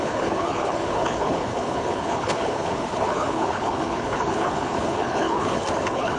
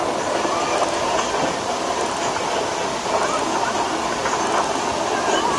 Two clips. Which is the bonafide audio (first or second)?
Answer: second